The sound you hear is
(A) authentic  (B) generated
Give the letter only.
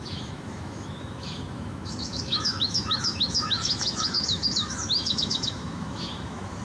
B